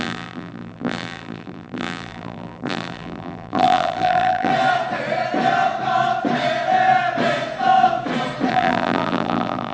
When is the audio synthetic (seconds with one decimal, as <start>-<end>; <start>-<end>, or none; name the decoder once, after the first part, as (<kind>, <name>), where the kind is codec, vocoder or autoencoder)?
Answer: 0.0-4.5 (vocoder, BigVGAN v2); 8.5-9.7